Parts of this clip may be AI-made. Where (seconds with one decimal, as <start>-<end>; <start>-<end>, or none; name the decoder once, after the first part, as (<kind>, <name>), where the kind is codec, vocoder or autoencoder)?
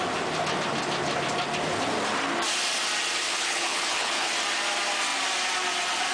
3.3-4.3 (codec, HILCodec)